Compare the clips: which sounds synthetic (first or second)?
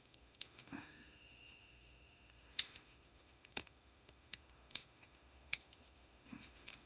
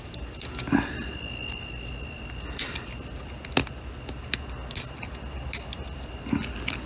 first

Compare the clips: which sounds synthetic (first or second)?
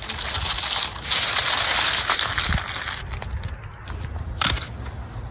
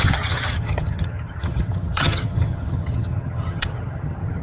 second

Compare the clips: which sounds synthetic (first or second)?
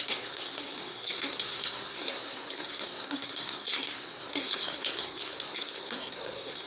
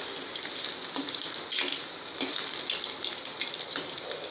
first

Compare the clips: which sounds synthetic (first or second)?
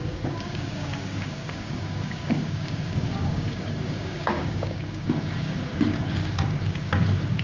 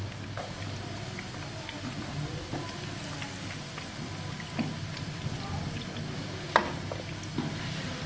first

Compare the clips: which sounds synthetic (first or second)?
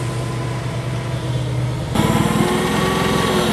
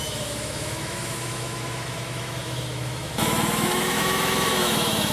second